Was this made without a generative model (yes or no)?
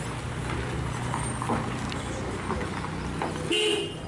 yes